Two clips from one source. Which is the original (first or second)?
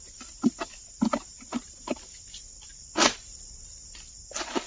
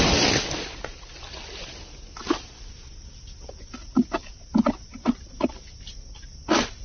second